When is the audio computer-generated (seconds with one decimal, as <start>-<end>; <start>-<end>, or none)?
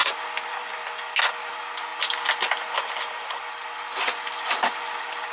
0.0-0.7